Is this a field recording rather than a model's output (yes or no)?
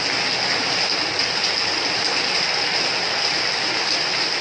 yes